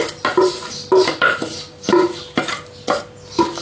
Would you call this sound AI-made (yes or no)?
no